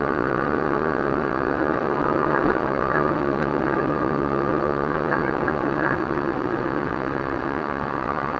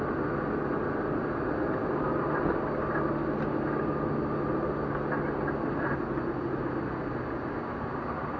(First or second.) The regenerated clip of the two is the first